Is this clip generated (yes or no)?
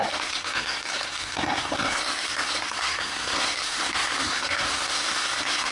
yes